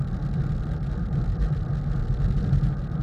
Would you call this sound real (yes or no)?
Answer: yes